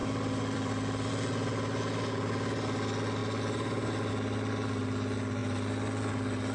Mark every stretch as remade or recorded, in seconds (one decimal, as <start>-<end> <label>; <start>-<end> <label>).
0.0-1.1 remade; 1.1-5.4 recorded; 5.4-6.1 remade; 6.1-6.5 recorded